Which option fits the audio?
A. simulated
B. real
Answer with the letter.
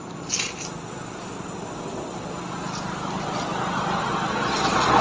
B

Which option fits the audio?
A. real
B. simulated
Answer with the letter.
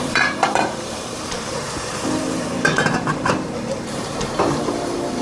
B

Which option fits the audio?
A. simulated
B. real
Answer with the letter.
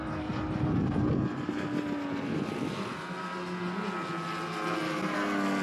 B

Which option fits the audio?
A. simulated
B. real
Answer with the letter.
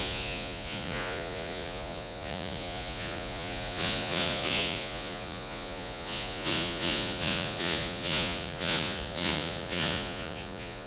A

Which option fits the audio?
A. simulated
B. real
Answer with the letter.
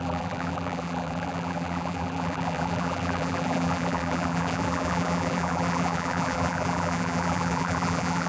A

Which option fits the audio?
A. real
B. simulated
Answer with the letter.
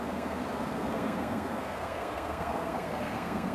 B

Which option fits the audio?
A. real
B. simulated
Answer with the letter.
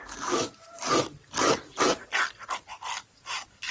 A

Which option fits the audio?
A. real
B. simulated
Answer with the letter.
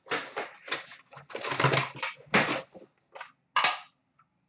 A